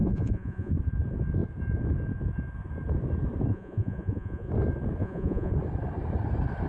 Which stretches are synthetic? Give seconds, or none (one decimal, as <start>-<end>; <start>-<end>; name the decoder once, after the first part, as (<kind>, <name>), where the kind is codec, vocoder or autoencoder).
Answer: 0.0-0.7 (vocoder, Vocos); 3.5-4.5; 5.0-5.5